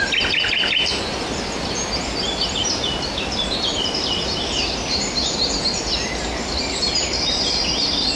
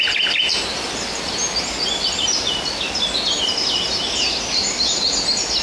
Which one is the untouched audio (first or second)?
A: second